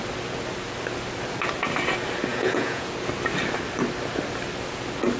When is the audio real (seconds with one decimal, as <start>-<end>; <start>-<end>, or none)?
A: 0.0-2.3; 2.9-5.2